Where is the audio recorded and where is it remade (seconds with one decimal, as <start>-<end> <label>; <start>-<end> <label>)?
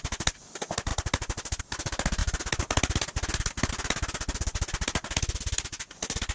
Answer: 0.0-6.3 recorded